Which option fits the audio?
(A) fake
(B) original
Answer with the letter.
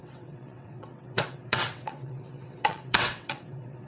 A